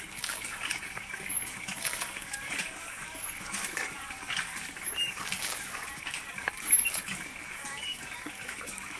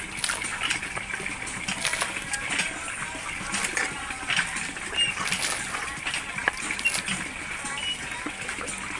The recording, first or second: second